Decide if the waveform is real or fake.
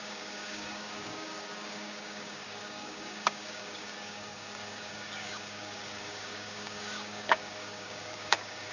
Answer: fake